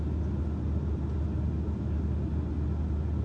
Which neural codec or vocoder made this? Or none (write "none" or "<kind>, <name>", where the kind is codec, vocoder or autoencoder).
none